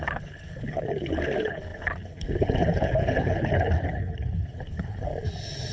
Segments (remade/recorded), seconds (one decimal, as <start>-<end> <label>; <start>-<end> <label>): 0.0-5.1 remade; 5.1-5.7 recorded